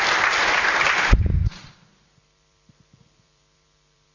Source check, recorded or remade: remade